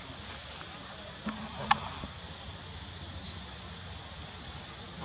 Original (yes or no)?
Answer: yes